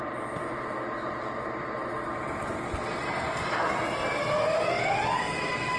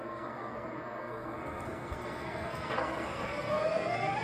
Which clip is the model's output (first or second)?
second